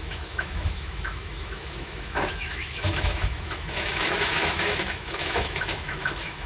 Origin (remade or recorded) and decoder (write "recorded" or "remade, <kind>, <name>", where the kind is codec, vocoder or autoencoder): remade, autoencoder, DAC-VAE